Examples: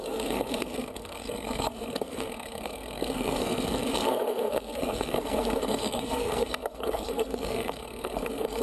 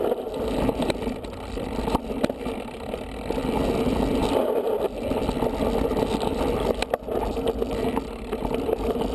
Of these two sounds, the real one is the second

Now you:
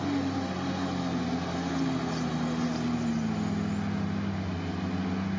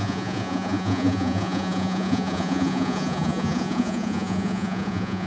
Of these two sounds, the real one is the first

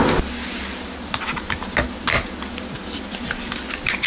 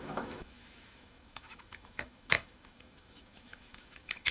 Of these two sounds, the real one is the first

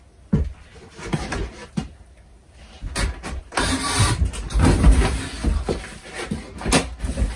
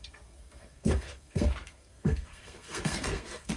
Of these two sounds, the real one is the first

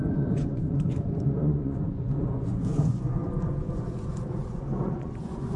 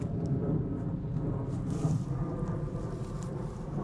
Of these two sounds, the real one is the second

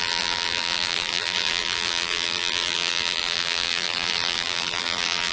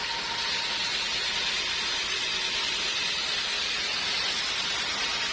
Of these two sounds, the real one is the second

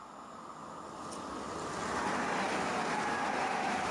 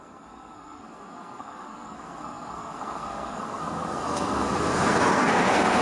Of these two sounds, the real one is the first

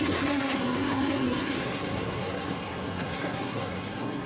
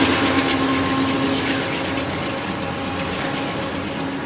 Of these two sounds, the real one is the second